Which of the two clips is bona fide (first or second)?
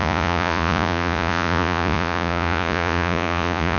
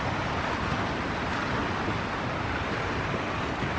second